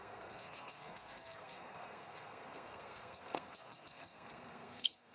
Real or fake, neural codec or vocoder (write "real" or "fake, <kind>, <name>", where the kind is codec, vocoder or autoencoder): fake, codec, SNAC